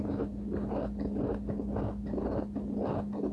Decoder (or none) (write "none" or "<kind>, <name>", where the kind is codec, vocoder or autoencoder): none